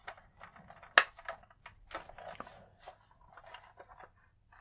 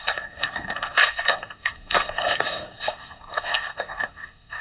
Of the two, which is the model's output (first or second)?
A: second